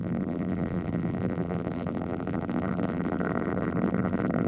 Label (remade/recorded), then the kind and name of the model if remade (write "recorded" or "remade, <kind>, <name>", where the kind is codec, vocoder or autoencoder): remade, vocoder, BigVGAN v2